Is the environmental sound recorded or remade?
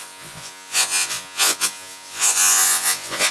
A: remade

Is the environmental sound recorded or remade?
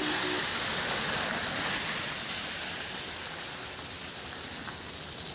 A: recorded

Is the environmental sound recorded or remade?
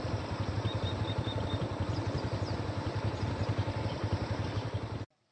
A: remade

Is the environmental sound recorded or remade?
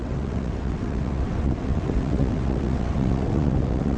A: remade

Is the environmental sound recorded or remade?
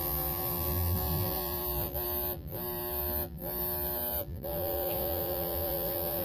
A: remade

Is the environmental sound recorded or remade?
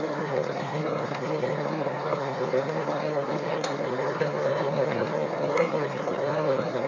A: remade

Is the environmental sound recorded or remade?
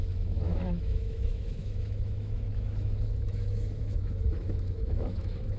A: remade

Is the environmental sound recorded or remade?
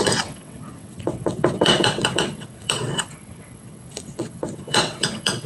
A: remade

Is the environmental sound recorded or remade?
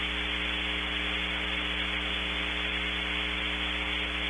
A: recorded